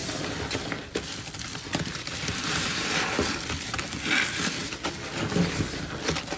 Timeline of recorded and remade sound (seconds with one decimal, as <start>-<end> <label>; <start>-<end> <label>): 0.0-3.8 remade; 3.8-6.4 recorded